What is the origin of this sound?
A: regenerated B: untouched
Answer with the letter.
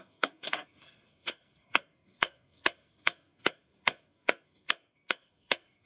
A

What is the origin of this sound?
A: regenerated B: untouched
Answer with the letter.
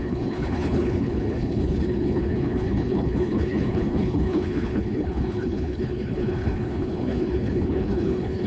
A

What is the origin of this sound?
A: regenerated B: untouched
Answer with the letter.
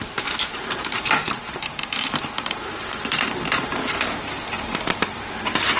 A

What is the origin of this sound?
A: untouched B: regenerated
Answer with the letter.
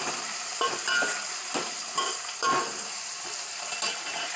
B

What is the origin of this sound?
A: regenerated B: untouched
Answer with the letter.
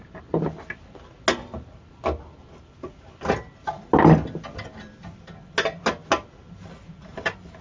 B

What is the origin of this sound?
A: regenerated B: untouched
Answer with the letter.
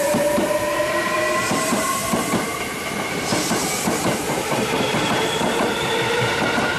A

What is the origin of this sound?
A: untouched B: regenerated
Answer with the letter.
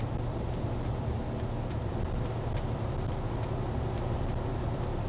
A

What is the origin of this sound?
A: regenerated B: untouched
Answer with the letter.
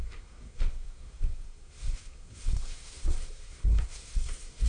A